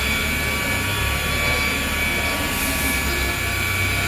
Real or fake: real